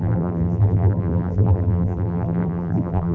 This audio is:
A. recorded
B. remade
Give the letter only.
B